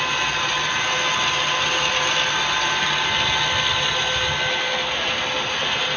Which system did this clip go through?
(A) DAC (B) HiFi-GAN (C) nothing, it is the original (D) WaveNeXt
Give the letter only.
C